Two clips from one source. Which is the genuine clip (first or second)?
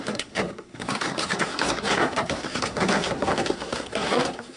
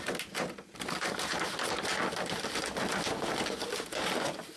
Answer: second